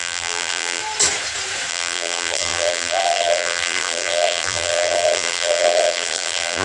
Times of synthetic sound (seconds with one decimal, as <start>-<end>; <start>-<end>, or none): 0.0-0.8; 1.7-6.6